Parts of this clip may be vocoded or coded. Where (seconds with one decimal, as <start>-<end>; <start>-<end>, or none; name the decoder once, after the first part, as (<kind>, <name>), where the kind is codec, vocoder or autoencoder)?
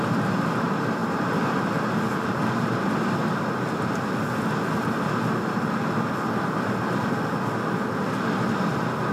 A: none